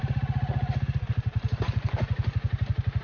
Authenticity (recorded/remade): recorded